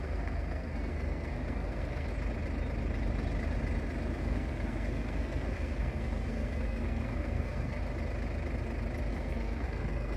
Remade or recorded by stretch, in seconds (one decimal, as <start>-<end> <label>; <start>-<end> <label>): 0.0-2.1 remade; 2.1-4.2 recorded; 4.2-7.8 remade; 7.8-9.1 recorded; 9.1-10.2 remade